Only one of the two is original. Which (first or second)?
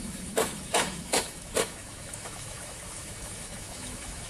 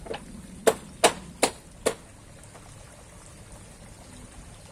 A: second